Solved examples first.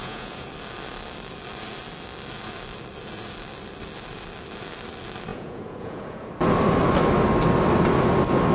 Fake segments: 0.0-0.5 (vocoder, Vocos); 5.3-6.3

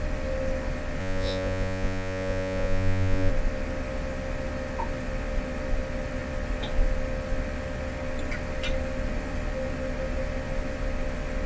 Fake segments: 1.0-3.3 (vocoder, Vocos)

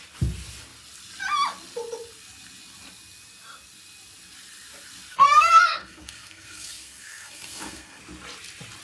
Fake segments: 5.1-8.0 (codec, SNAC)

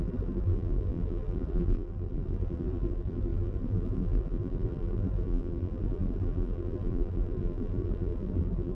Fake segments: 0.0-8.7 (vocoder, BigVGAN v2)

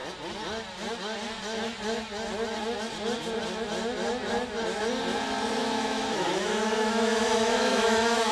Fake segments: 5.6-8.3 (autoencoder, DAC-VAE)